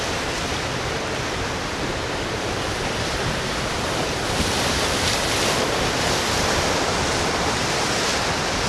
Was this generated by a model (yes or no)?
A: no